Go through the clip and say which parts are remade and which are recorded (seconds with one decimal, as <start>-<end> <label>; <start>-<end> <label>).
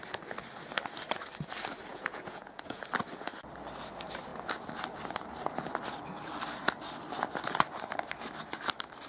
0.0-1.9 recorded; 1.9-2.8 remade; 2.8-9.1 recorded